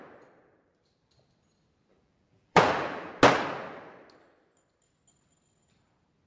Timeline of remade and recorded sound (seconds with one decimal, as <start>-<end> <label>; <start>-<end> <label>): 0.0-1.9 recorded; 1.9-3.1 remade; 3.1-6.3 recorded